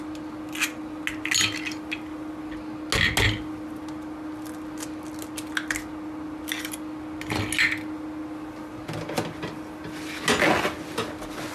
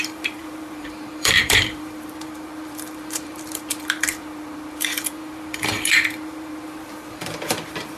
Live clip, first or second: first